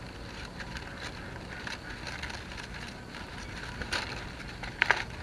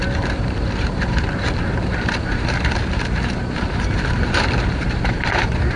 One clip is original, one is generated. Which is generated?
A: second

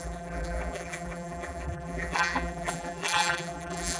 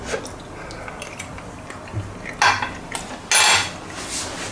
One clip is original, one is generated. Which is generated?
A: first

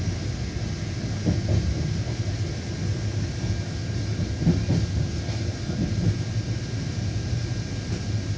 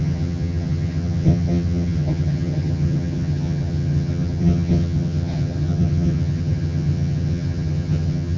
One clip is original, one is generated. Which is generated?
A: second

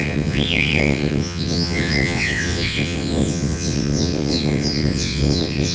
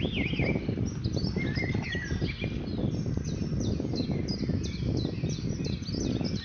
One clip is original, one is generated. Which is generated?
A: first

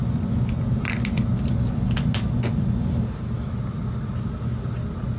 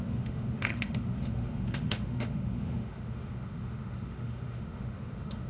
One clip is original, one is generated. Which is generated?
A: second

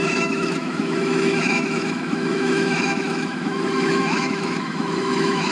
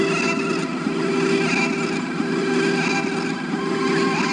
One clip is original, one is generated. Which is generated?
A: first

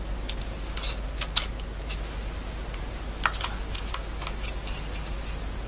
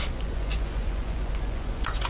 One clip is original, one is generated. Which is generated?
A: second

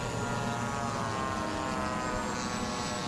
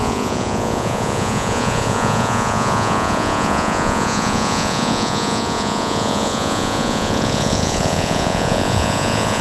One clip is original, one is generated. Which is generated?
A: second